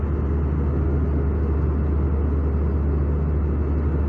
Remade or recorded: recorded